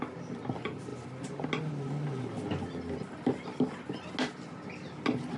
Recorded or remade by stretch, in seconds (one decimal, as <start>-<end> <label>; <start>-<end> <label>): 0.0-5.4 recorded